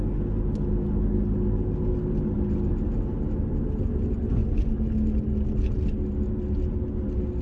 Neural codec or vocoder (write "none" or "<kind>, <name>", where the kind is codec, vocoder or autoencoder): none